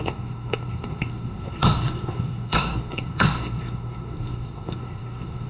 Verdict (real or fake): fake